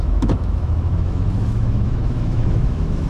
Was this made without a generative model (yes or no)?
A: no